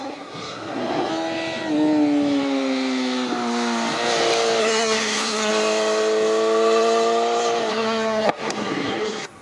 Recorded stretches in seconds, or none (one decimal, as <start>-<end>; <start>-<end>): 1.1-4.6; 5.5-7.7